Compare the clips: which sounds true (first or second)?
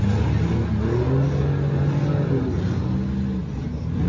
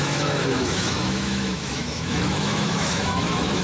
first